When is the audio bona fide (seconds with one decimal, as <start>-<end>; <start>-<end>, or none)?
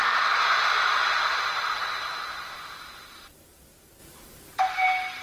0.0-4.0; 4.6-5.2